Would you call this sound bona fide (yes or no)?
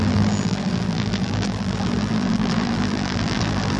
no